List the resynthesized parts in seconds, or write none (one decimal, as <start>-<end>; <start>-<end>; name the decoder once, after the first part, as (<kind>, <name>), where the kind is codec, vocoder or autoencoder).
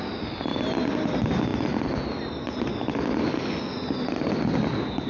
none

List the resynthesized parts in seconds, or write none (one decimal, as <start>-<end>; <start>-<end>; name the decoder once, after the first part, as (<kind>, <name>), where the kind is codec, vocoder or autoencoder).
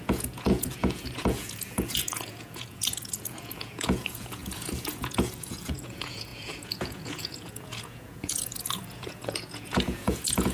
0.0-10.5 (vocoder, Vocos)